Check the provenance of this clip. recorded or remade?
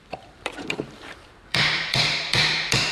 remade